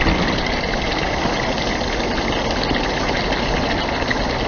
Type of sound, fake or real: real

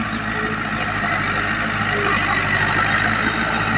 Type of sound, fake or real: real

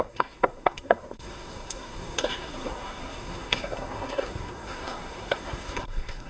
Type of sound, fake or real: fake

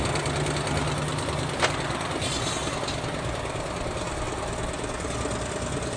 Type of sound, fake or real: real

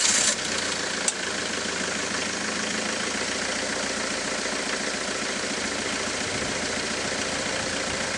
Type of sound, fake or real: real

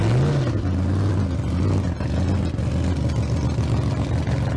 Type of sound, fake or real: real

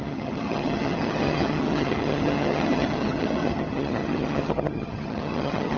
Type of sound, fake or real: fake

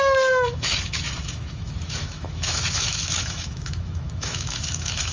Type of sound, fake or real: fake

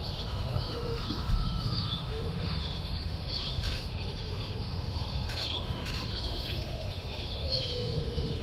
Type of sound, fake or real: fake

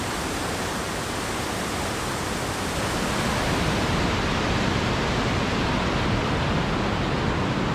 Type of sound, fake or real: real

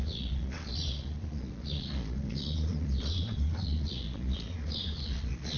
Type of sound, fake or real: fake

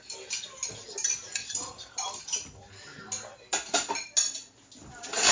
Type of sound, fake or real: real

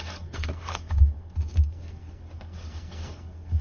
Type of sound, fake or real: fake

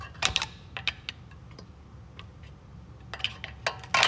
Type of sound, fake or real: real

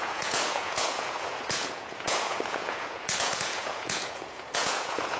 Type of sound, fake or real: fake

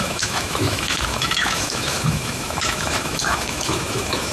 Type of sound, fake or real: fake